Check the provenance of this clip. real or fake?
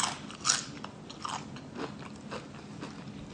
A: real